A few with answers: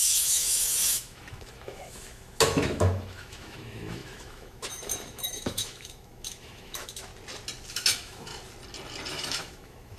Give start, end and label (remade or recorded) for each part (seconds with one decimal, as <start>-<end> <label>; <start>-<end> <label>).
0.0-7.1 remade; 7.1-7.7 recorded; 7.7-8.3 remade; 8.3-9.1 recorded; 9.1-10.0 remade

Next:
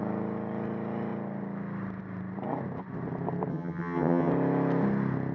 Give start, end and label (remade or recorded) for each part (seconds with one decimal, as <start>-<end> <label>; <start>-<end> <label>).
0.0-3.5 recorded; 3.5-4.3 remade; 4.3-5.3 recorded

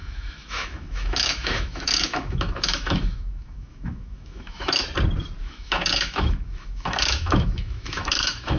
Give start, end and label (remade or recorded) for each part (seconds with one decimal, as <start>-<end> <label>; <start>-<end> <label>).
0.0-4.8 remade; 4.8-5.4 recorded; 5.4-8.6 remade

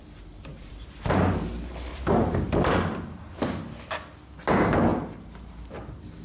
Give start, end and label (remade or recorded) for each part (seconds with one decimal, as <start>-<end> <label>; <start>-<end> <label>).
0.0-0.5 recorded; 0.5-1.2 remade; 1.2-1.9 recorded; 1.9-3.4 remade; 3.4-4.9 recorded; 4.9-5.5 remade; 5.5-6.2 recorded